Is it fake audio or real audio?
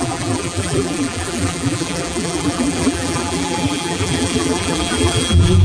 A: fake